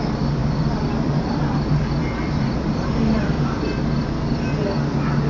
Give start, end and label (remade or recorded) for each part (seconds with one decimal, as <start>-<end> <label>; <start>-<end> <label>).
0.0-0.4 recorded; 0.4-3.6 remade; 3.6-5.3 recorded